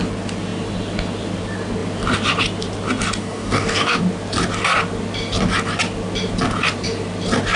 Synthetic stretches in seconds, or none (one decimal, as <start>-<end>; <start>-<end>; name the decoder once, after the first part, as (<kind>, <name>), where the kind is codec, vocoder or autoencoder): 3.2-4.0 (codec, DAC)